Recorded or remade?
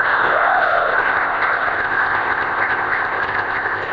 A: remade